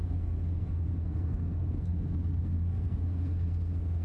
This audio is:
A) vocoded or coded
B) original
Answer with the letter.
A